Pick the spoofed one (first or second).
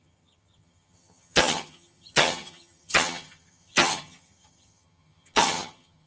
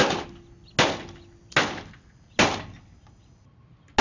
first